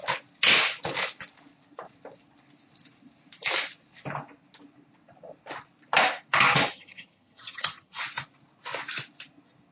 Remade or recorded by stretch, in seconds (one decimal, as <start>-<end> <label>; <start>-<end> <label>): 0.0-6.7 recorded; 6.7-8.0 remade; 8.0-9.7 recorded